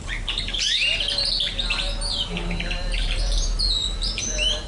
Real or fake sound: fake